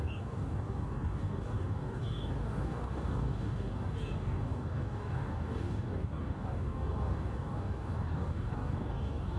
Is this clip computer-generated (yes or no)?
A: yes